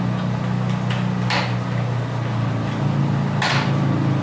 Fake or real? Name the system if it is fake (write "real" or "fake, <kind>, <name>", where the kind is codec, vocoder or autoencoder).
real